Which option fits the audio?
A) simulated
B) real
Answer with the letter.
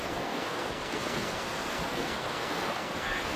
A